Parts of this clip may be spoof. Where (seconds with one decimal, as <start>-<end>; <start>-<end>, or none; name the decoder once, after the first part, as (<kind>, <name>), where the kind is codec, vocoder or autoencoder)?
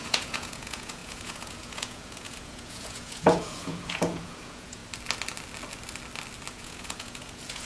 0.0-4.8 (vocoder, Vocos); 6.5-7.7